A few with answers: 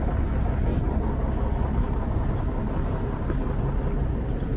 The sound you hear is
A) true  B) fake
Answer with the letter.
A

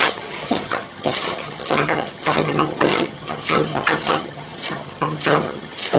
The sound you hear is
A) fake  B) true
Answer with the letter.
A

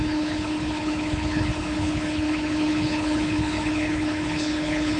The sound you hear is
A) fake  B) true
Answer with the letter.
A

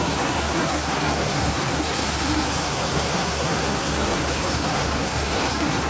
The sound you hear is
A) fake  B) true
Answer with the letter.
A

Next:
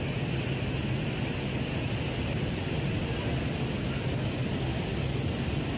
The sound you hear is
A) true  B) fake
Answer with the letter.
A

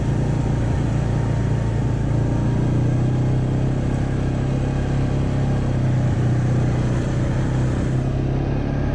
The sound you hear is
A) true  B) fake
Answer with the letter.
A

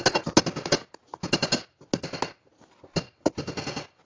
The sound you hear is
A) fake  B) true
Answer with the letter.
B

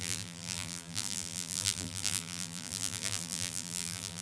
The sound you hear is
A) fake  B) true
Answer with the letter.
A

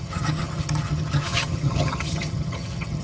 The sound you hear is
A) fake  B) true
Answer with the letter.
A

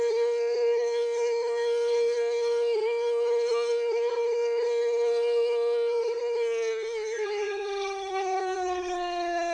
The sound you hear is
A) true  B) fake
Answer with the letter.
B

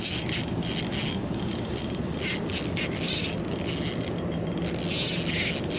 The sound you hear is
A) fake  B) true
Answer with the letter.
B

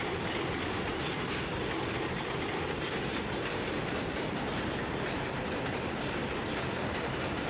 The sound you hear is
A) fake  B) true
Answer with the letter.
B